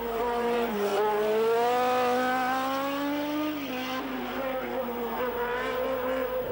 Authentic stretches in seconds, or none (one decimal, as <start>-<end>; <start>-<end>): 0.9-4.8